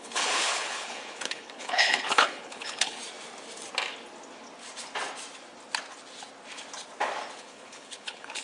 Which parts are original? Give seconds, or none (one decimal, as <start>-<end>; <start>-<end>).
3.0-7.4